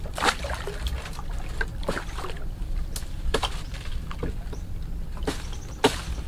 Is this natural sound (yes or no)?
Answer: yes